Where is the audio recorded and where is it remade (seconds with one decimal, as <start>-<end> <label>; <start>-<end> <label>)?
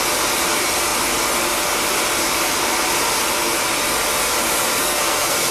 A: 0.0-4.8 recorded; 4.8-5.5 remade